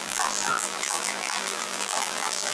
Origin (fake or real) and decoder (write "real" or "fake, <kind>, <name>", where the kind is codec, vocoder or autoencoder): fake, vocoder, BigVGAN v2